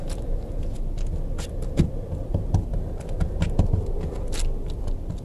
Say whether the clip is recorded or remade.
recorded